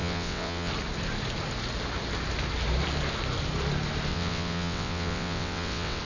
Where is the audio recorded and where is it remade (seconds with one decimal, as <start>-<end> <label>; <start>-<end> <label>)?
0.0-0.7 remade; 0.7-4.1 recorded; 4.1-6.0 remade